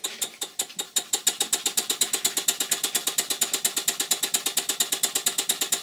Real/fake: real